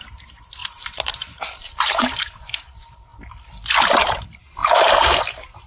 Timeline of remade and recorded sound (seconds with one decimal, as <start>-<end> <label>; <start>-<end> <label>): 0.0-3.1 remade; 3.1-3.8 recorded; 3.8-5.7 remade